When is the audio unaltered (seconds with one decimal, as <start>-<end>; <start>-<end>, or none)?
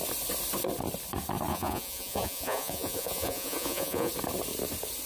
0.0-1.5; 4.1-5.1